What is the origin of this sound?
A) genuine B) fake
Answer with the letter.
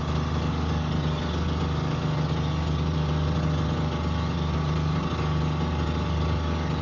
A